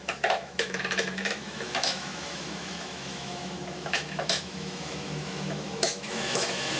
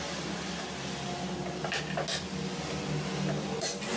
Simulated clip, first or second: first